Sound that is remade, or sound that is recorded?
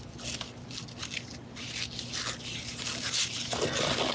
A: recorded